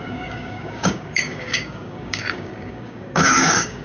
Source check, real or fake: fake